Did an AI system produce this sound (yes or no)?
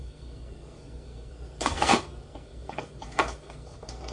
yes